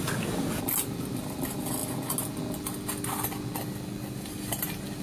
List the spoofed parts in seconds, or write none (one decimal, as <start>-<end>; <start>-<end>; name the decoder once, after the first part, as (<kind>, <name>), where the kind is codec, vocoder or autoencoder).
none